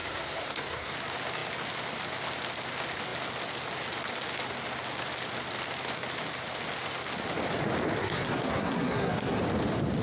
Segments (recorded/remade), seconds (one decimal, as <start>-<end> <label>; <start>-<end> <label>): 0.0-0.9 remade; 0.9-8.0 recorded; 8.0-9.4 remade; 9.4-10.0 recorded